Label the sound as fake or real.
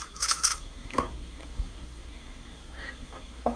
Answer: fake